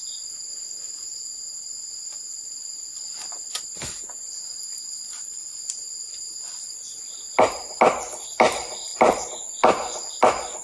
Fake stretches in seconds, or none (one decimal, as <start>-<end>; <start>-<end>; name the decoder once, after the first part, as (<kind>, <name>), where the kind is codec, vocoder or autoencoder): none